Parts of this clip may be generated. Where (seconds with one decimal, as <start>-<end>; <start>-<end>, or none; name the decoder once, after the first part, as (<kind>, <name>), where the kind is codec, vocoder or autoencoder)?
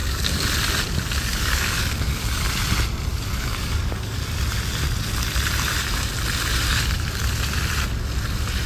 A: 0.0-0.5 (codec, DAC); 1.3-2.5; 3.1-4.2; 6.7-7.3